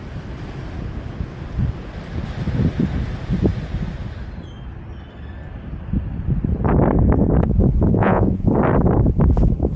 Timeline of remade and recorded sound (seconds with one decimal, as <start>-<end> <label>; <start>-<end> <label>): 0.0-7.9 recorded; 7.9-8.5 remade; 8.5-9.8 recorded